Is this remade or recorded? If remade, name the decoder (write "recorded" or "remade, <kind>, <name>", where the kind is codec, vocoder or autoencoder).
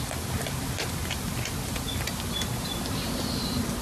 recorded